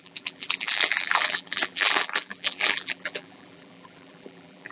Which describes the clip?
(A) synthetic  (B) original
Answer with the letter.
A